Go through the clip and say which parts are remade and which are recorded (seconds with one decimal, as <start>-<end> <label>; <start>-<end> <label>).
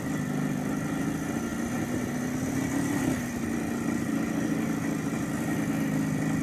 0.0-6.4 recorded